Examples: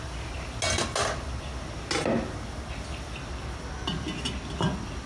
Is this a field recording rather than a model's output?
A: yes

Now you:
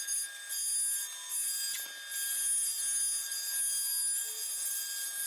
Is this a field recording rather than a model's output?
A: yes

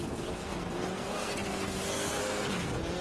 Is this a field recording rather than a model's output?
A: no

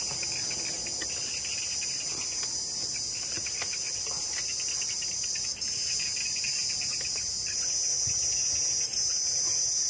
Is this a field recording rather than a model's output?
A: yes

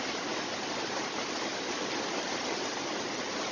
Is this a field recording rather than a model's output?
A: yes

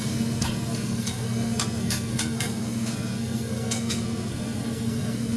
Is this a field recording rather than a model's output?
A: no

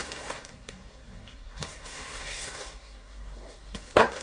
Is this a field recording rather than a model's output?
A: no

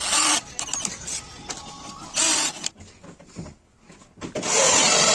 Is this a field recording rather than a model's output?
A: yes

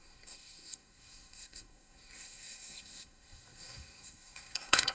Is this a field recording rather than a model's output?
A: no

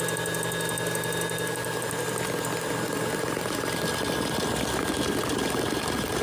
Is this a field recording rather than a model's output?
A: yes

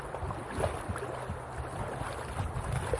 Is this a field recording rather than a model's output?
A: yes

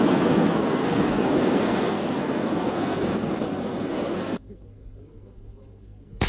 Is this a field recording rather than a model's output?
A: no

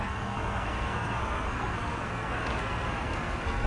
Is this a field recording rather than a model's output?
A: no